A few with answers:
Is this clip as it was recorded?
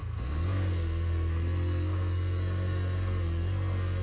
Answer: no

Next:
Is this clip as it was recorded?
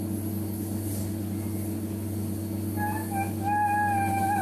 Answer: yes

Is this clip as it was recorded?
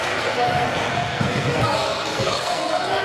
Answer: no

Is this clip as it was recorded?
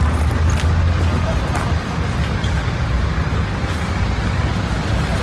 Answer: yes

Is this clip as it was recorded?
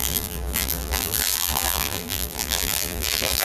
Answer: no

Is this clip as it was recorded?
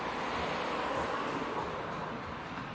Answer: yes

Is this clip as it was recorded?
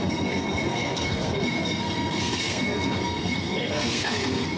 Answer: no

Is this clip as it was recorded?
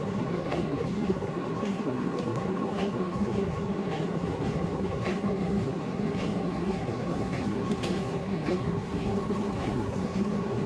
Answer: no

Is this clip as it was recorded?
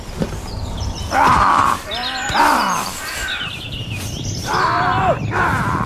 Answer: no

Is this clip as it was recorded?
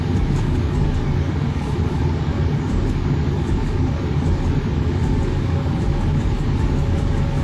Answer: no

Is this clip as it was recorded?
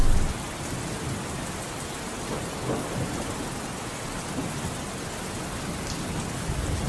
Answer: yes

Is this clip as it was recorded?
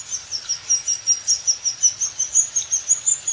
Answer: yes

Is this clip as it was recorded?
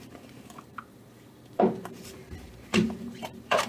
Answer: no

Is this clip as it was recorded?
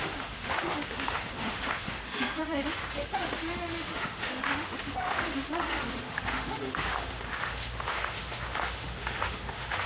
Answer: no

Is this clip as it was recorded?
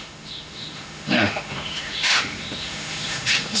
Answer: no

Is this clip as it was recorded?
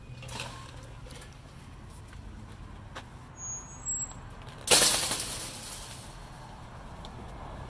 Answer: yes